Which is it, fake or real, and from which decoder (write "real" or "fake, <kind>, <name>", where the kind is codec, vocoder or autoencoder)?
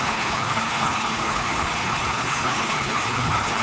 fake, codec, HILCodec